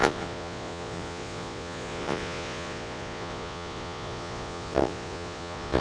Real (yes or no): no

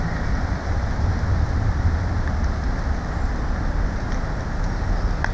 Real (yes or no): yes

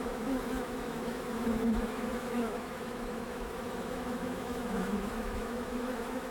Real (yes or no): no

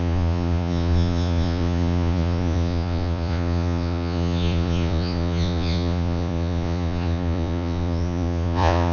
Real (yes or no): no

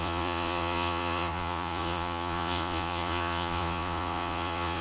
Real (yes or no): no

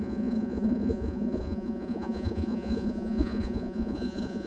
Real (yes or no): no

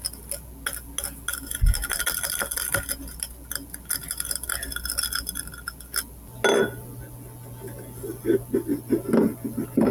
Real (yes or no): yes